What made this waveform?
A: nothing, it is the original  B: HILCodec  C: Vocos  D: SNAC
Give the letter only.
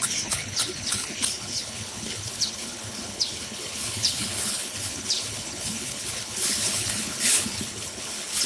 B